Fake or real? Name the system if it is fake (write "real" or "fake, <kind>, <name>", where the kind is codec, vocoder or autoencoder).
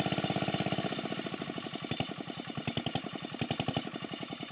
real